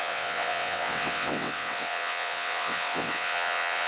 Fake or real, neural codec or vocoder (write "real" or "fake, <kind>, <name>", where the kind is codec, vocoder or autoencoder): fake, vocoder, WaveNeXt